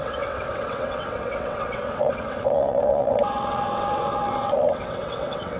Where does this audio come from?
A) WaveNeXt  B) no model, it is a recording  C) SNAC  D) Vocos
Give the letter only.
A